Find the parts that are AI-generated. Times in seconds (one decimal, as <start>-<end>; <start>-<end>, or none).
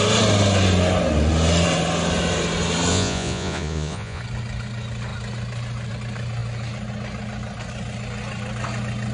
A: 2.9-4.2